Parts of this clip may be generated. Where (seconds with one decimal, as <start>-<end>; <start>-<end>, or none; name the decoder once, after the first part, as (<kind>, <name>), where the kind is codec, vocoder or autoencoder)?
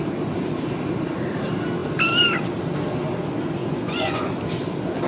3.6-4.3 (vocoder, Vocos)